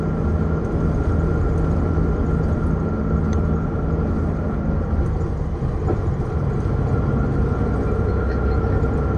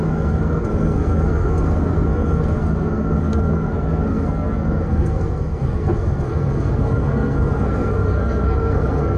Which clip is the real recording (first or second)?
first